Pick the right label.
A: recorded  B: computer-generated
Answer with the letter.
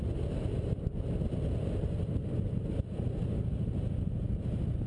A